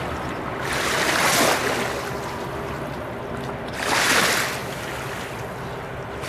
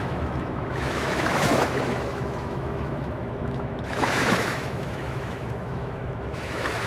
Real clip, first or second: first